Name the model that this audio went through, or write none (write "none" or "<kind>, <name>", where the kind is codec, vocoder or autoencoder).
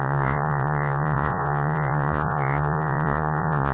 vocoder, Vocos